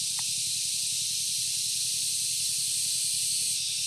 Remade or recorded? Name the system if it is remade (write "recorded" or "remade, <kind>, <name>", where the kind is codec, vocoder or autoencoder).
recorded